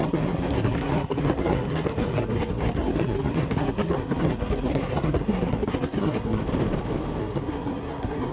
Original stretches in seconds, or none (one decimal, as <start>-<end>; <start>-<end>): 6.4-7.2